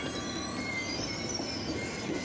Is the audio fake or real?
real